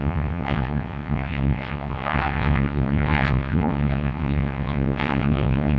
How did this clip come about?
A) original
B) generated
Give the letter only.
B